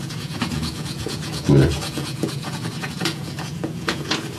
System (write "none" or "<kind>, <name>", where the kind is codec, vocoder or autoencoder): vocoder, Vocos